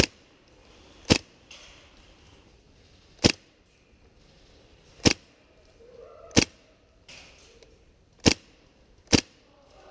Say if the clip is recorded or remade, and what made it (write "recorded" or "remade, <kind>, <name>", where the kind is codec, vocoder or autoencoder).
remade, vocoder, BigVGAN v2